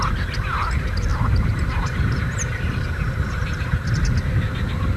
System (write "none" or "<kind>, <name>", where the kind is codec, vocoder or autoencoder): none